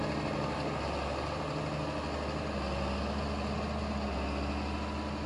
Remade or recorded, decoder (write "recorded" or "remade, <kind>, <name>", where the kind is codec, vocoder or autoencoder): recorded